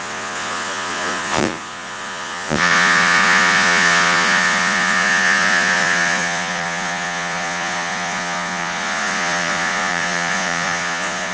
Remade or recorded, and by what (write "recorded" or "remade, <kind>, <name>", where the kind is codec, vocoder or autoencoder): remade, vocoder, Vocos